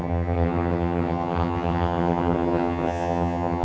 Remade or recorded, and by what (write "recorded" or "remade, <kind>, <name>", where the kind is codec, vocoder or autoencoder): remade, vocoder, HiFi-GAN